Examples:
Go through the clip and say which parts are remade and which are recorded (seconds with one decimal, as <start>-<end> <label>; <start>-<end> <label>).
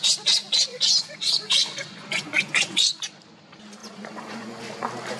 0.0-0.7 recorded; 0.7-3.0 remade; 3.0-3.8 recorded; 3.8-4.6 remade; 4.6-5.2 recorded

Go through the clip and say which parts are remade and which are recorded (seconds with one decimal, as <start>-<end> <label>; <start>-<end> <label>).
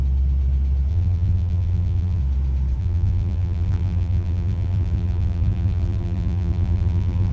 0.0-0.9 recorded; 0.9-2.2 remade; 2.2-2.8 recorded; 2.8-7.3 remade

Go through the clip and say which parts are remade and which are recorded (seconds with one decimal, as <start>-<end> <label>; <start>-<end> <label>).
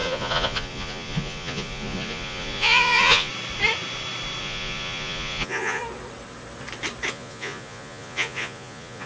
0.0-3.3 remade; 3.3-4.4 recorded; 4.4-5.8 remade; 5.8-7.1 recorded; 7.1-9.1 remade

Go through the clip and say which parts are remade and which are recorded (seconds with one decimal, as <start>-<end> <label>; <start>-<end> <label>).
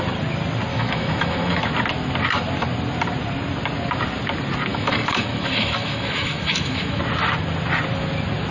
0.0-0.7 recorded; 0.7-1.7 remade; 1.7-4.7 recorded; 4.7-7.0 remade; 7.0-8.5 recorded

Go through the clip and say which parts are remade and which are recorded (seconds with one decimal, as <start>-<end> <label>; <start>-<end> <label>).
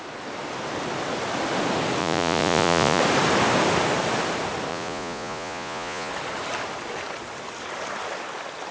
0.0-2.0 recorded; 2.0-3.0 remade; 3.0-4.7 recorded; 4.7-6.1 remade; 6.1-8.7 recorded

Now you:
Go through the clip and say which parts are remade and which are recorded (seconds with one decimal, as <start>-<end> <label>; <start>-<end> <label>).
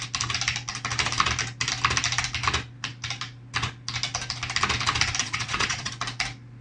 0.0-5.2 recorded; 5.2-5.9 remade; 5.9-6.6 recorded